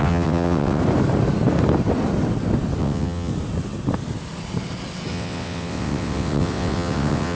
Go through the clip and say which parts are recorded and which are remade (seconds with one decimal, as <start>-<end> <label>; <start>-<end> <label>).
0.0-0.8 remade; 0.8-2.8 recorded; 2.8-3.3 remade; 3.3-5.1 recorded; 5.1-7.3 remade